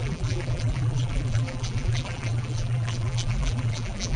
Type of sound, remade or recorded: remade